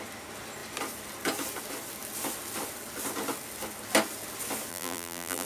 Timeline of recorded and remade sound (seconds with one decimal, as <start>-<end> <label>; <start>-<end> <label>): 0.0-4.7 recorded; 4.7-5.5 remade